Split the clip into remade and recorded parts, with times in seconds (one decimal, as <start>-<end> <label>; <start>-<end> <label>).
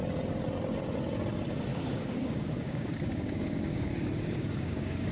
0.0-1.7 recorded; 1.7-5.1 remade